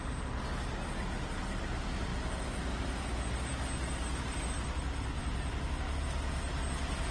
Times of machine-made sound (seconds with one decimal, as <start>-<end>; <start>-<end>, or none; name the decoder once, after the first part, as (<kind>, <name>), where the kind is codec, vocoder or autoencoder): none